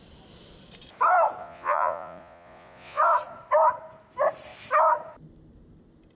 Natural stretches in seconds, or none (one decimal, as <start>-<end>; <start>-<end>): 0.0-1.4; 3.0-6.2